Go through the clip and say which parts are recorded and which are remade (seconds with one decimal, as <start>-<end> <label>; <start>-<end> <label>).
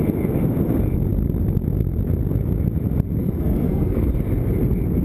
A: 0.0-3.2 recorded; 3.2-4.1 remade; 4.1-5.0 recorded